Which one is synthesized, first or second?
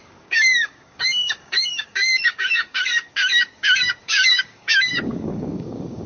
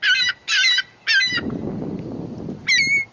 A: first